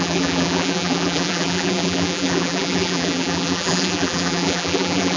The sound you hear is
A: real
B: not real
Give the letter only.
B